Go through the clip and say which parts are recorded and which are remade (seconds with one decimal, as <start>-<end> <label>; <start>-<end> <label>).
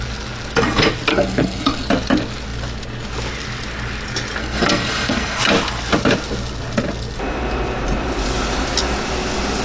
0.0-1.1 recorded; 1.1-1.9 remade; 1.9-4.4 recorded; 4.4-5.4 remade; 5.4-9.6 recorded